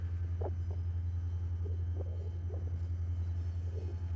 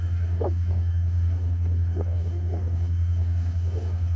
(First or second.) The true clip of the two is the first